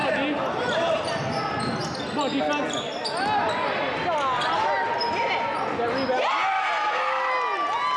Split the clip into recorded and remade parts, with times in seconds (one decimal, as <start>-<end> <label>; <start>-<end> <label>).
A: 0.0-6.6 recorded; 6.6-7.3 remade; 7.3-8.0 recorded